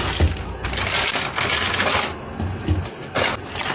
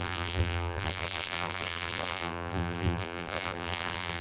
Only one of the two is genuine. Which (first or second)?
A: first